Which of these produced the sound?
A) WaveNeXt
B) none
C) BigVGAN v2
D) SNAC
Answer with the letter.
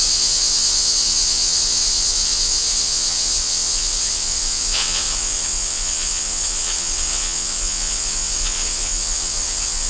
A